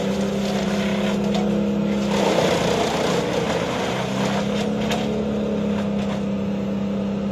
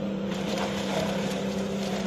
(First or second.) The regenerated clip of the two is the second